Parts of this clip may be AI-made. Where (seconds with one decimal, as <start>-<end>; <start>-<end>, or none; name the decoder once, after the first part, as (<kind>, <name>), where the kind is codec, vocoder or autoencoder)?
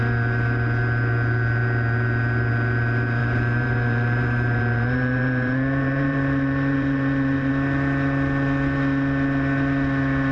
3.2-7.5 (vocoder, BigVGAN v2)